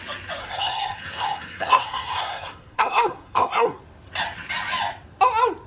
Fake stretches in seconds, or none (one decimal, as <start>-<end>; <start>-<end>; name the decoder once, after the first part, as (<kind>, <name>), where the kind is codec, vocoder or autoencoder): 0.4-3.8 (codec, SNAC)